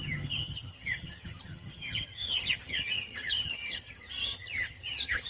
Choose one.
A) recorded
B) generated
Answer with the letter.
B